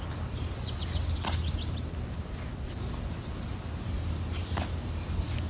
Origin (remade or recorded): recorded